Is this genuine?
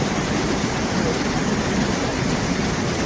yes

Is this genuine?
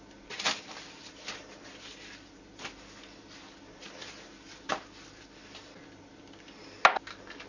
yes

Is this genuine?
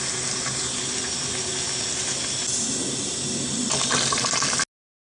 yes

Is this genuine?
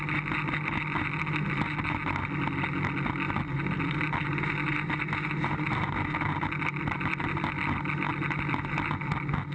yes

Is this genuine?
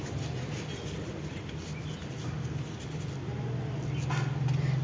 yes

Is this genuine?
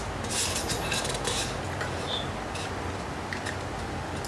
yes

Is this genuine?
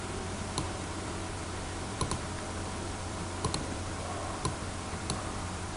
no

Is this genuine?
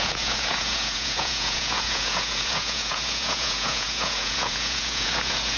no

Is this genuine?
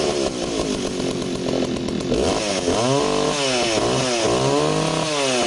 yes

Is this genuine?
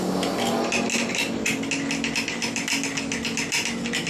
yes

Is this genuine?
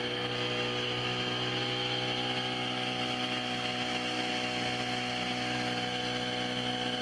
yes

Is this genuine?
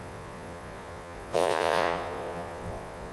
no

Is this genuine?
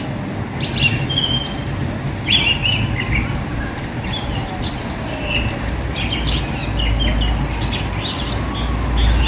yes